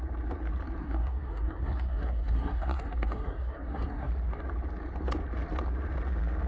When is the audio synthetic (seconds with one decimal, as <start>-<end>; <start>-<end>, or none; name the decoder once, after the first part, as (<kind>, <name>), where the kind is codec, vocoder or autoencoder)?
0.8-4.1 (codec, SNAC)